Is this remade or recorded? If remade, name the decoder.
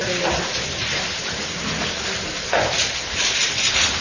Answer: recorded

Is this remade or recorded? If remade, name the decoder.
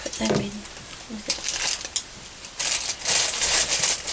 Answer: recorded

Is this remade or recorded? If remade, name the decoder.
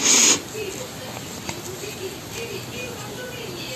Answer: recorded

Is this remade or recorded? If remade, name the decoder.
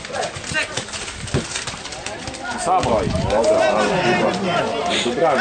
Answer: recorded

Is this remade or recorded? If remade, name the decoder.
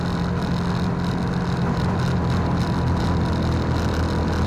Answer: recorded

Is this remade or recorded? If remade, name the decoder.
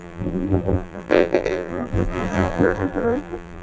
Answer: remade, vocoder, BigVGAN v2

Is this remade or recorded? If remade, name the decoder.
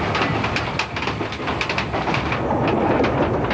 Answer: recorded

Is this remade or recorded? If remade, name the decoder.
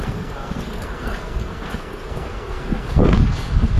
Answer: remade, codec, SNAC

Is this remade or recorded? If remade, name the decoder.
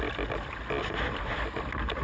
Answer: recorded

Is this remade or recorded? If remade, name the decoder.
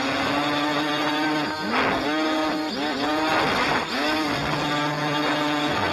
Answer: recorded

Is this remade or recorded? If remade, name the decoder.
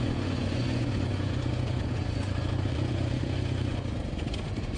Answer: remade, vocoder, Vocos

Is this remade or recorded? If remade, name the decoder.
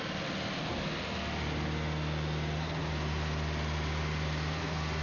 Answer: recorded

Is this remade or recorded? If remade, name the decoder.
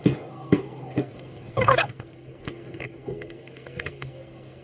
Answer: remade, codec, SNAC